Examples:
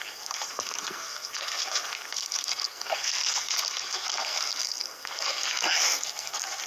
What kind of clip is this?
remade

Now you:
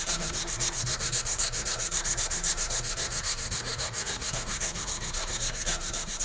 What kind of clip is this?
remade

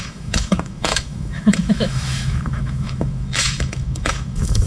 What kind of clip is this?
remade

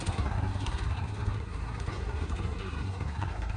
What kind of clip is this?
remade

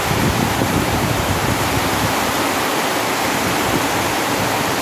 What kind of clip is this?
remade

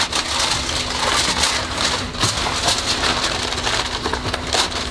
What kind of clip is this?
recorded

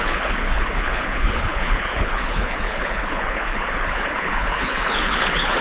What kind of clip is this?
remade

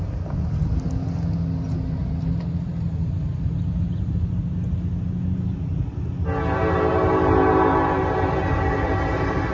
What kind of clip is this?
recorded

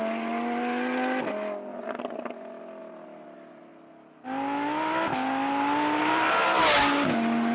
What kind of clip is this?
recorded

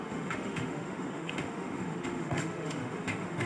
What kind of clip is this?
remade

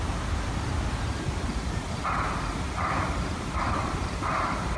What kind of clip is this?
recorded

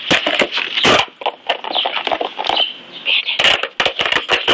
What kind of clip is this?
recorded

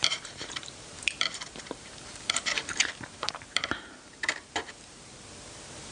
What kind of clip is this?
remade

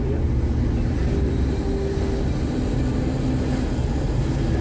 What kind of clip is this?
recorded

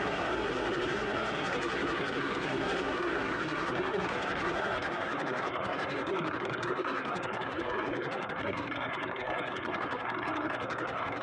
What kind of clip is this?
remade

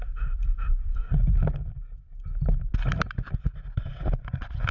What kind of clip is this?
recorded